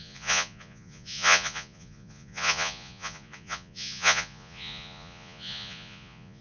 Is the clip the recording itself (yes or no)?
no